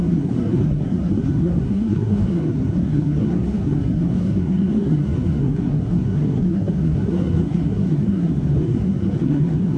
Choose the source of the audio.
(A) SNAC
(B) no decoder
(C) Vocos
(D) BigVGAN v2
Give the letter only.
A